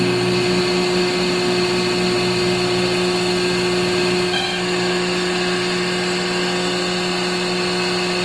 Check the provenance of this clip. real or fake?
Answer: real